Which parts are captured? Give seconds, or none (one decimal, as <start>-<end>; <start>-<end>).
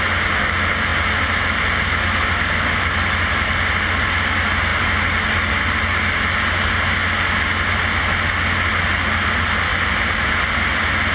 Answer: 0.0-11.1